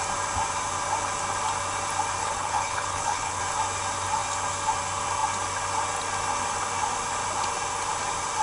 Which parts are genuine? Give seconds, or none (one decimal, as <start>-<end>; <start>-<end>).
0.0-2.2; 3.4-8.4